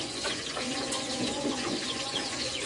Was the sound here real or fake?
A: fake